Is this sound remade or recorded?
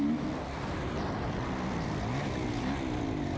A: recorded